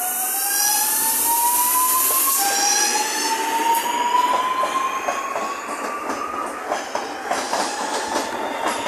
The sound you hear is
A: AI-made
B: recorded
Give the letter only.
B